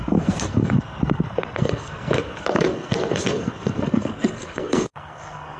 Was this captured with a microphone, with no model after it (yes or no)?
no